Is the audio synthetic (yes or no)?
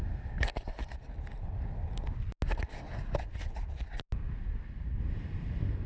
no